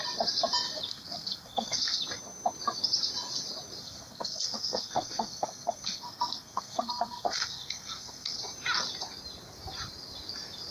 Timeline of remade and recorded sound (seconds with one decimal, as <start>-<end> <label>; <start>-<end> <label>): 0.0-0.9 recorded; 0.9-2.0 remade; 2.0-3.8 recorded; 3.8-8.4 remade; 8.4-10.7 recorded